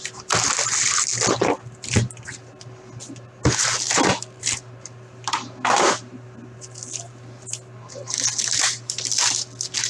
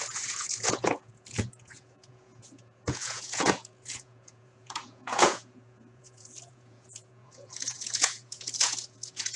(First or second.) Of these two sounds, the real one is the first